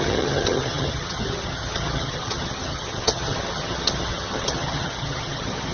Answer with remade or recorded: remade